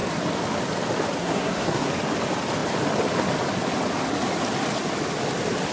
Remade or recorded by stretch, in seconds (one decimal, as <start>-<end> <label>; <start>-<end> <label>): 0.0-1.2 recorded; 1.2-1.9 remade; 1.9-5.7 recorded